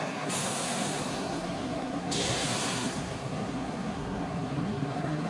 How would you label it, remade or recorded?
remade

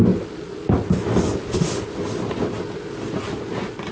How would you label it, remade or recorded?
recorded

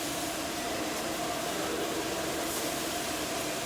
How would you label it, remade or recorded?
recorded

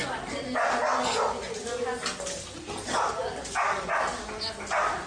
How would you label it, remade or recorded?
recorded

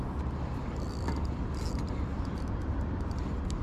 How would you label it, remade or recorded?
recorded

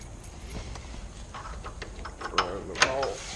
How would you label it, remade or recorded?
recorded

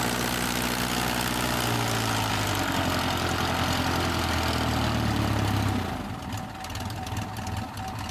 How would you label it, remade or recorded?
recorded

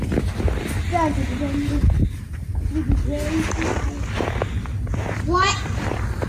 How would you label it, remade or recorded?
recorded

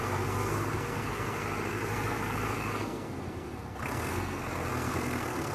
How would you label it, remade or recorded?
remade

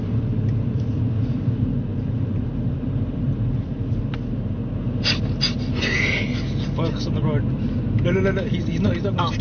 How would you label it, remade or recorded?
recorded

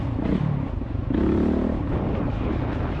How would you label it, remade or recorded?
recorded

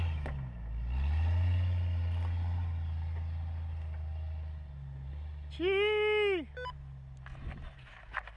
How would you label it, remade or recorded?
recorded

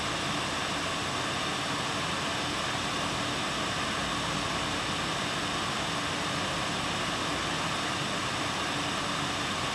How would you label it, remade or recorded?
recorded